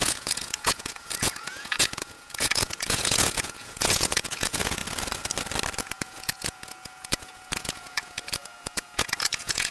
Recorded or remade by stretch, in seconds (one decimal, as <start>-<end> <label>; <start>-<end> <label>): 0.0-4.8 remade; 4.8-5.8 recorded; 5.8-9.7 remade